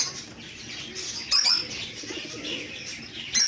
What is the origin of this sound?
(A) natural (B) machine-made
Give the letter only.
A